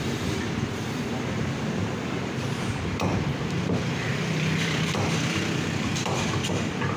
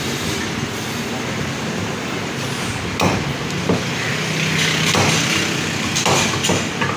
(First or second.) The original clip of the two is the second